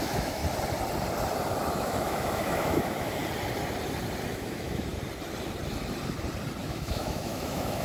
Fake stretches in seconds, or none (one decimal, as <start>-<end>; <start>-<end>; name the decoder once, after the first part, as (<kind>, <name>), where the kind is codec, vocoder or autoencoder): 0.0-0.4 (autoencoder, DAC-VAE); 1.7-3.2; 4.3-4.9; 6.6-7.8